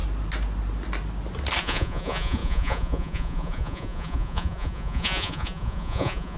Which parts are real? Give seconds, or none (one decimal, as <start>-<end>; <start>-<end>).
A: 0.0-1.6